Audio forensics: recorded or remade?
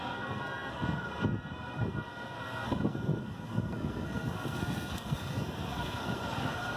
remade